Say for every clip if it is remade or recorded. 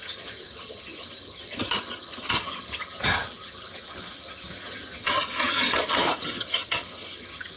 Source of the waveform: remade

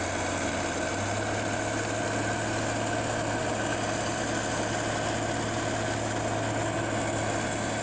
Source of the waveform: recorded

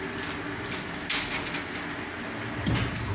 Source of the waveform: recorded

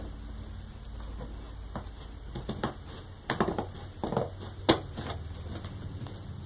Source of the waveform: recorded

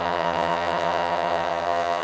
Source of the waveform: remade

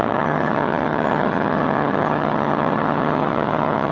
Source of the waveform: remade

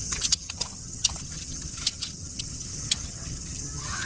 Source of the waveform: remade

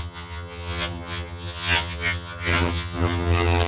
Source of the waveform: remade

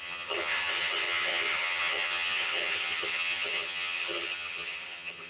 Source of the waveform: remade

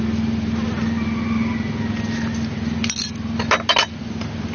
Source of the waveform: recorded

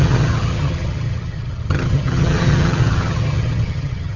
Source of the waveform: remade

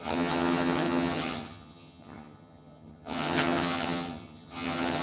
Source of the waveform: remade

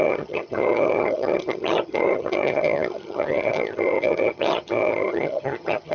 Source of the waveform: remade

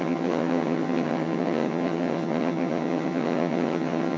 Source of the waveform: remade